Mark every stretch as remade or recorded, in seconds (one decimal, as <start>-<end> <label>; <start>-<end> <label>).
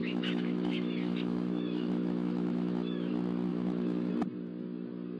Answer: 0.0-3.1 remade; 3.1-3.5 recorded; 3.5-4.1 remade; 4.1-5.2 recorded